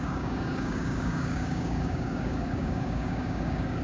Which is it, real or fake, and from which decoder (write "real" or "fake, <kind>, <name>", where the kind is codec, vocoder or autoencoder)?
fake, codec, DAC